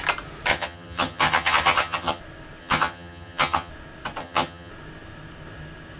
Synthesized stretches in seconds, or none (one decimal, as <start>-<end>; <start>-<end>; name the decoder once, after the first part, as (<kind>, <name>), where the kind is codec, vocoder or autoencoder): 0.5-2.2 (vocoder, HiFi-GAN); 2.6-3.7; 4.2-4.7